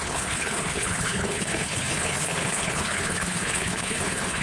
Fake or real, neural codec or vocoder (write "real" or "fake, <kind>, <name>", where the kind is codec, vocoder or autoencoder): fake, codec, HILCodec